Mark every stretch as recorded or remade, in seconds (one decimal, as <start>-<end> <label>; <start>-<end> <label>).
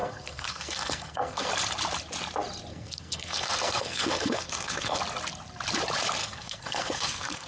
0.0-1.5 remade; 1.5-2.7 recorded; 2.7-5.0 remade; 5.0-6.2 recorded; 6.2-7.5 remade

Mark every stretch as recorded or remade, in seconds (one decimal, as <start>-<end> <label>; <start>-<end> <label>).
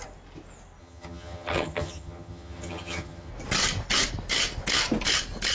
0.0-0.8 recorded; 0.8-3.3 remade; 3.3-5.5 recorded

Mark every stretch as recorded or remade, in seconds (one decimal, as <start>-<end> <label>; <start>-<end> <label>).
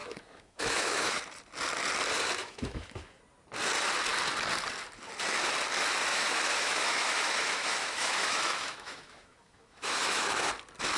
0.0-1.2 remade; 1.2-2.4 recorded; 2.4-3.2 remade; 3.2-6.1 recorded; 6.1-10.5 remade; 10.5-11.0 recorded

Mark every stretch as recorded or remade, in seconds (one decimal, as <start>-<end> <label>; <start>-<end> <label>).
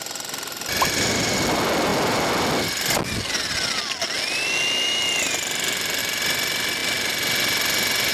0.0-8.1 recorded